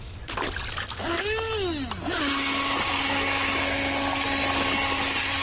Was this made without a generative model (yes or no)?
yes